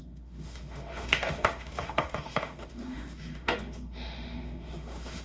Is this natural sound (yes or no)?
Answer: no